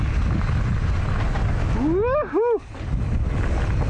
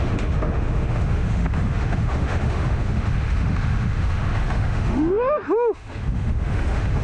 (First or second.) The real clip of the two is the first